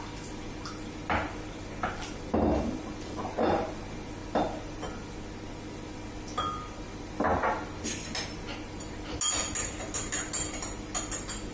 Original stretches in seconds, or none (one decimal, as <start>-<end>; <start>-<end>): 0.0-11.5